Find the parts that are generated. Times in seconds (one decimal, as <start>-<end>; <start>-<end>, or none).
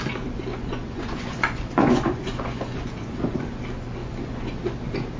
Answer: 0.5-3.6; 4.0-4.6